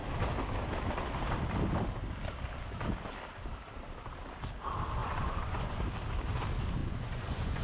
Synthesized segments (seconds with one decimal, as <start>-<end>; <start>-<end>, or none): 5.0-5.8; 6.8-7.6